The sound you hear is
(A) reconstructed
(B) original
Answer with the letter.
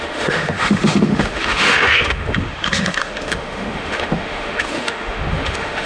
A